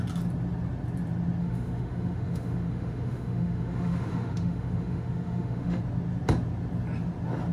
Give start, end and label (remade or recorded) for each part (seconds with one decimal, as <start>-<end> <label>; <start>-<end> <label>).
0.0-1.4 recorded; 1.4-5.8 remade; 5.8-7.5 recorded